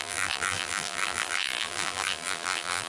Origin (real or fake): fake